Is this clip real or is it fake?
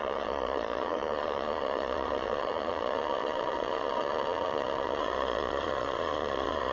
fake